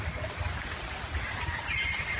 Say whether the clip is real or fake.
real